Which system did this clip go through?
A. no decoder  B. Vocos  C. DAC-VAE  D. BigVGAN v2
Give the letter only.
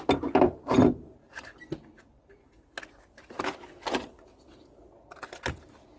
A